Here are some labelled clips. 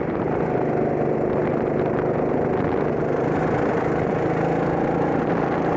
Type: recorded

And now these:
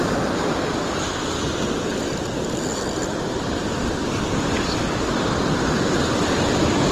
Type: recorded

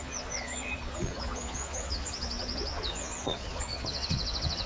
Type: remade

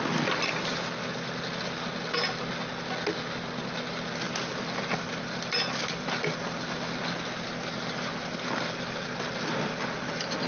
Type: recorded